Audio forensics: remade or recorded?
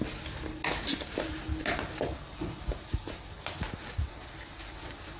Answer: recorded